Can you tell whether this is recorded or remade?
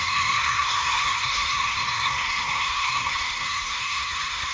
remade